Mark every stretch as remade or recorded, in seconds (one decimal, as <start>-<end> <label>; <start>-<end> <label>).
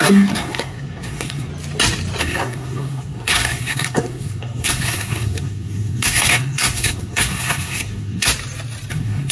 0.0-1.5 remade; 1.5-2.2 recorded; 2.2-8.3 remade; 8.3-8.9 recorded; 8.9-9.3 remade